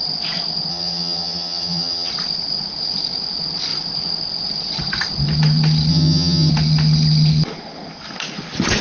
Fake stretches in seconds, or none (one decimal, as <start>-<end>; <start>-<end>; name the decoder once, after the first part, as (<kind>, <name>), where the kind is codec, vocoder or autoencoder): 0.7-2.1 (vocoder, HiFi-GAN); 5.9-6.5